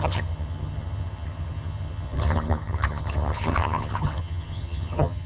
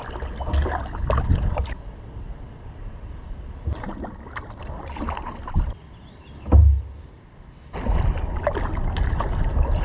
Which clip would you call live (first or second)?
second